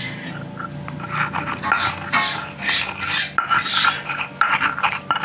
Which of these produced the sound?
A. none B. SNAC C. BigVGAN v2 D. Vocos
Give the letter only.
A